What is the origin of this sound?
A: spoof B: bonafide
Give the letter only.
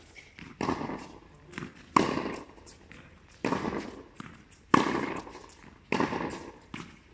B